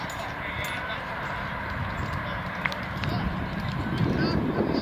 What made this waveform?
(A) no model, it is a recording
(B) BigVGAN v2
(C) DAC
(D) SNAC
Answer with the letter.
A